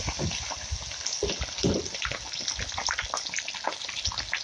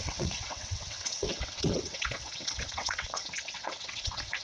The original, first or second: first